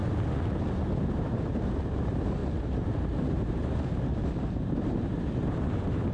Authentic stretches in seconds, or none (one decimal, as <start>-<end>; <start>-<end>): 0.0-0.8; 2.4-3.3; 4.2-4.8